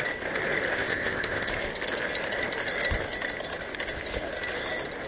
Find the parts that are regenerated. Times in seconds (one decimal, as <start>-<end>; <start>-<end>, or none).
0.7-1.5